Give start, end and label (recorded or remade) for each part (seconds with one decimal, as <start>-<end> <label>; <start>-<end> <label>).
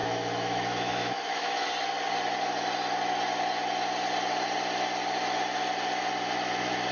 0.0-1.7 remade; 1.7-6.9 recorded